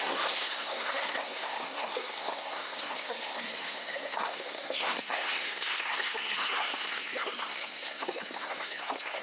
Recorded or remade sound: remade